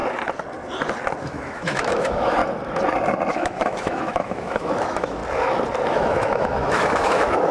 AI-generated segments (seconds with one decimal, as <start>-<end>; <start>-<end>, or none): 1.2-2.4; 3.3-5.2; 5.9-7.5